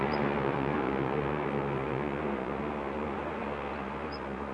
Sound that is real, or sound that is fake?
fake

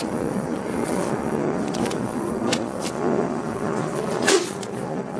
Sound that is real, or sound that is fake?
fake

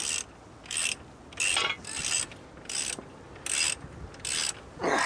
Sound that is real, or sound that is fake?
real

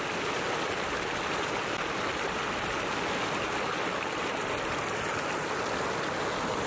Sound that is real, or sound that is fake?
real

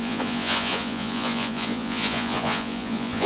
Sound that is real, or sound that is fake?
fake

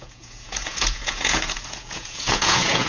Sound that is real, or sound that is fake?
fake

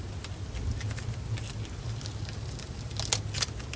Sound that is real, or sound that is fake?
real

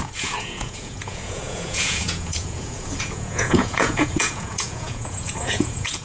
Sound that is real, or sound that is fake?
fake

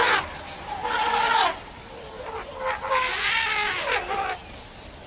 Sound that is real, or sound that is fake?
real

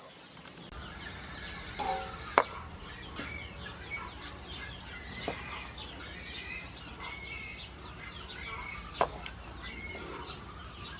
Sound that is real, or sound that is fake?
real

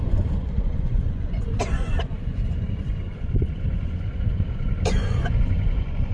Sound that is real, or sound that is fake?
fake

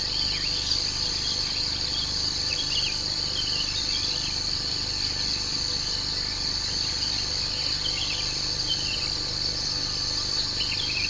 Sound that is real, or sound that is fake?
real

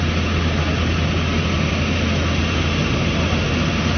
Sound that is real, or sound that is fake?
real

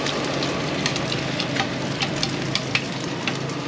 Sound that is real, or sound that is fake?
real